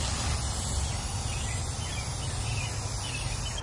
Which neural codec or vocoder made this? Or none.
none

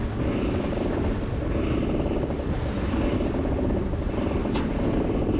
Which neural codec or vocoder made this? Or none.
vocoder, BigVGAN v2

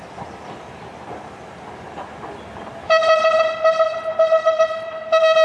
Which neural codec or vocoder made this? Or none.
none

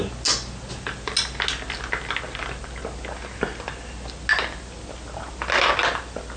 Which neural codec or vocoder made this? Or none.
none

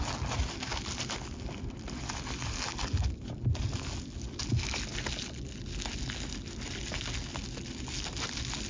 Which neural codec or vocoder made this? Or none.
none